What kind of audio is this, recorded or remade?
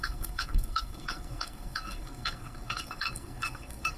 remade